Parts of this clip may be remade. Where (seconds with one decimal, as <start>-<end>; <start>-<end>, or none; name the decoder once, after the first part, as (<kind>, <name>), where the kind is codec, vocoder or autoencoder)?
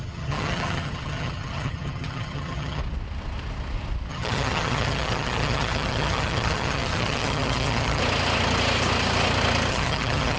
0.0-2.8 (vocoder, HiFi-GAN); 4.1-8.0; 9.7-10.4